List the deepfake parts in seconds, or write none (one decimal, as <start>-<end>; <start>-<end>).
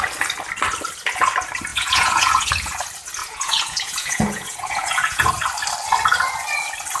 1.7-2.5; 3.2-5.3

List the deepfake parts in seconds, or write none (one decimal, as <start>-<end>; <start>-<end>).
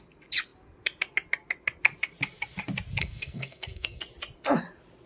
3.0-4.0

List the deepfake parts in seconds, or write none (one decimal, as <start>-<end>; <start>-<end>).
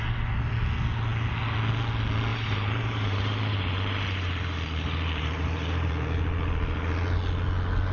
2.3-5.9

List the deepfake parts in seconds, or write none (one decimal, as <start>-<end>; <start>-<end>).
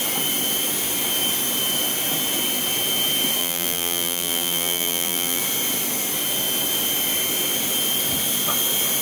3.4-5.4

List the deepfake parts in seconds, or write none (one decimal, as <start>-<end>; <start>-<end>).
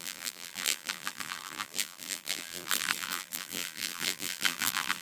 0.0-5.0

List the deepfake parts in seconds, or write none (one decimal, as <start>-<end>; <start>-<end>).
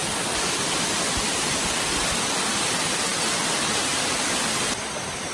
none